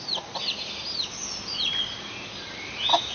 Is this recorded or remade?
recorded